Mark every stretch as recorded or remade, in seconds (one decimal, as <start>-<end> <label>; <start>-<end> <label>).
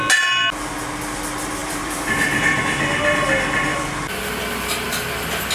0.0-1.6 recorded; 1.6-2.6 remade; 2.6-3.7 recorded; 3.7-4.3 remade; 4.3-5.5 recorded